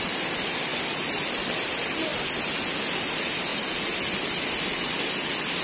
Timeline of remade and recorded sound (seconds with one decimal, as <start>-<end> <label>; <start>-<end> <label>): 0.0-0.7 remade; 0.7-1.4 recorded; 1.4-2.1 remade; 2.1-3.1 recorded; 3.1-3.5 remade; 3.5-5.6 recorded

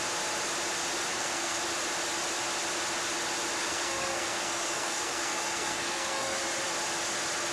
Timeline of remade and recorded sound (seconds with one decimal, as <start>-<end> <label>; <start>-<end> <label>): 0.0-1.1 recorded; 1.1-1.6 remade; 1.6-3.6 recorded; 3.6-6.4 remade; 6.4-7.5 recorded